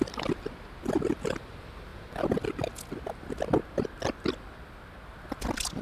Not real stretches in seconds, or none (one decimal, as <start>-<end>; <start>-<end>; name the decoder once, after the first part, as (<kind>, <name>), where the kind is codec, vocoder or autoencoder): none